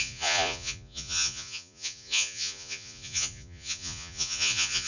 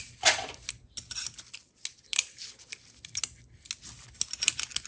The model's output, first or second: first